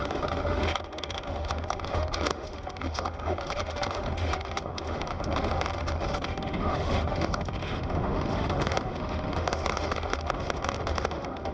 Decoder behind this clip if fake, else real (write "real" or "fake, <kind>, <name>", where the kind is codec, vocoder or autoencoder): fake, autoencoder, DAC-VAE